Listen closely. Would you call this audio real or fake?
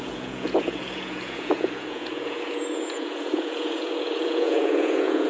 fake